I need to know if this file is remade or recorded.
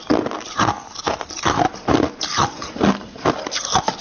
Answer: recorded